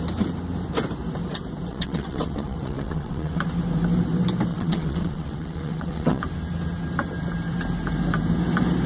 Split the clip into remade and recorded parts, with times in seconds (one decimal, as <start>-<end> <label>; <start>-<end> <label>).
0.0-1.7 recorded; 1.7-3.4 remade; 3.4-4.5 recorded; 4.5-6.2 remade; 6.2-8.9 recorded